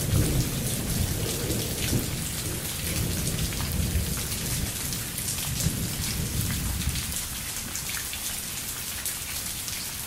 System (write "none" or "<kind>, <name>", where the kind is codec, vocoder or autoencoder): none